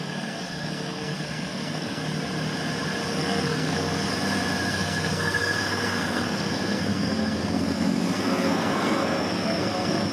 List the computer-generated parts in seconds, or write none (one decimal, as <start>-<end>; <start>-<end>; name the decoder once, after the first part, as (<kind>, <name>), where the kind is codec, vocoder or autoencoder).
0.0-2.0 (codec, SNAC); 3.1-4.1; 4.7-10.1